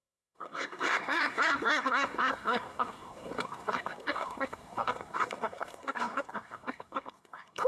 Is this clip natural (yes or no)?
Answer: no